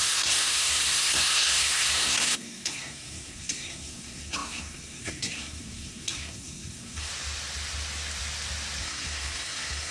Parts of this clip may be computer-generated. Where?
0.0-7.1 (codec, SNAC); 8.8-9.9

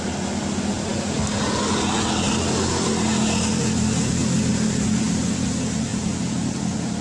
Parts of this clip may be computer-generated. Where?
none

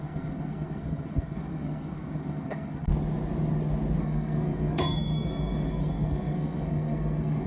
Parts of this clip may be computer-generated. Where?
0.0-2.9 (codec, SNAC); 4.0-7.5